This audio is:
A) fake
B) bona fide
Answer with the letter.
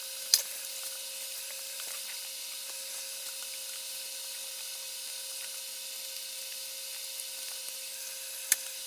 B